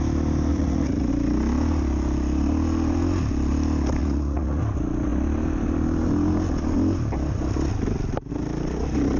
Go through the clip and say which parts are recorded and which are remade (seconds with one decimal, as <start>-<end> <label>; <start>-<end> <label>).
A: 0.0-0.5 recorded; 0.5-1.1 remade; 1.1-4.0 recorded; 4.0-4.6 remade; 4.6-9.2 recorded